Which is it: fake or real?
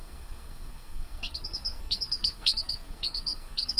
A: fake